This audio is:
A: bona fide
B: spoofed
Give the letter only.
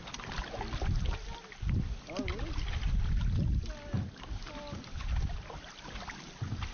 A